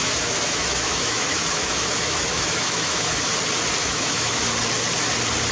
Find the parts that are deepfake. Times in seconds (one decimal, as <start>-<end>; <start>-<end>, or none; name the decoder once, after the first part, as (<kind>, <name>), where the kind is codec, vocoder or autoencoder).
0.0-3.3 (autoencoder, DAC-VAE); 3.8-4.4